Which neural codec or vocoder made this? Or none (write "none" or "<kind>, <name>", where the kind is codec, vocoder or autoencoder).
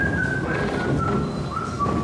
none